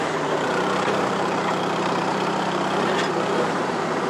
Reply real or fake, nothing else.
fake